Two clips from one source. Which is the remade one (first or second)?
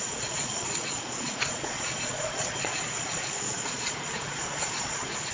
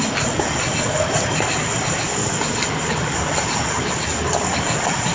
first